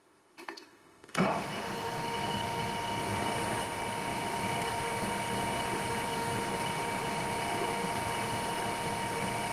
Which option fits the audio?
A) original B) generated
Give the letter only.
B